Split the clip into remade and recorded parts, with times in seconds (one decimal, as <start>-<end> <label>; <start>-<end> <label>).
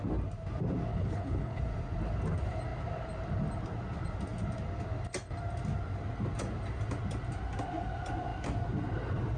0.0-0.9 recorded; 0.9-1.6 remade; 1.6-9.4 recorded